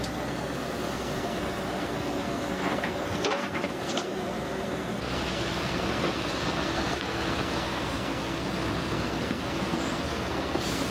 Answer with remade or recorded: remade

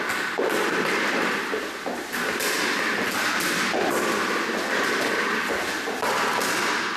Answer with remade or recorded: recorded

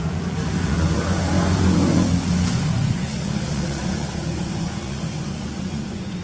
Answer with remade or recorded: remade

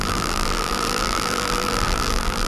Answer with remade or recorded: remade